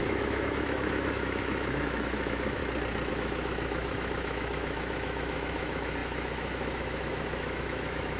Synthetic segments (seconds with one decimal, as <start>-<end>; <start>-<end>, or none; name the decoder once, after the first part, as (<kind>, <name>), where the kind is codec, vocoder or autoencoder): 0.0-2.6 (autoencoder, DAC-VAE); 3.1-8.2

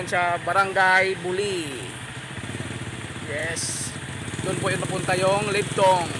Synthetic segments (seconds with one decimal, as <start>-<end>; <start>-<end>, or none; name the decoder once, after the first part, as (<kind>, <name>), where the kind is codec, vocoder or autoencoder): 0.7-1.4 (autoencoder, DAC-VAE); 3.4-3.9